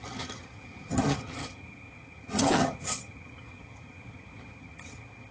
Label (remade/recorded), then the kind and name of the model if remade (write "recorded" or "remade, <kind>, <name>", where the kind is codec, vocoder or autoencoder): remade, vocoder, HiFi-GAN